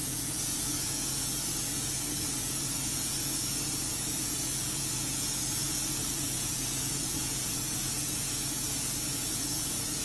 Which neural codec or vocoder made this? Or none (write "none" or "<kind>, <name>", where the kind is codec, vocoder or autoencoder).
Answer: vocoder, Vocos